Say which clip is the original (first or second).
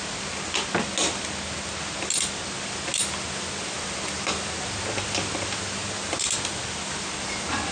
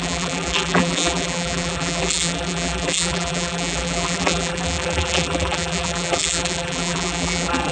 first